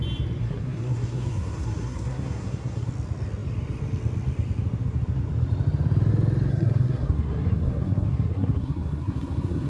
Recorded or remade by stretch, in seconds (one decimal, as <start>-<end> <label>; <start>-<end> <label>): 0.0-0.4 recorded; 0.4-2.9 remade; 2.9-6.5 recorded; 6.5-9.7 remade